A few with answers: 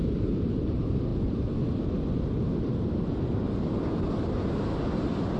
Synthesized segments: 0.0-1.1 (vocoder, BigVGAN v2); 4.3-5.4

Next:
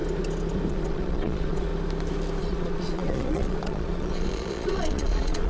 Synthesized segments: 0.7-1.7 (vocoder, Vocos); 2.4-5.5

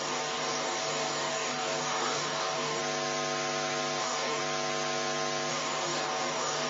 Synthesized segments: 0.0-2.8 (codec, DAC); 4.0-4.4; 5.5-6.7

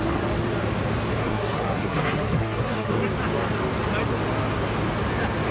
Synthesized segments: 1.2-3.0 (codec, SNAC)

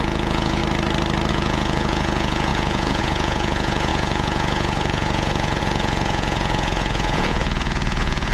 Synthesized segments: 0.0-0.6 (vocoder, Vocos); 1.3-8.3

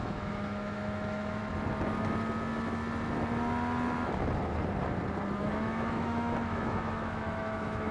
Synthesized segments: 0.0-1.4 (autoencoder, DAC-VAE); 5.4-7.9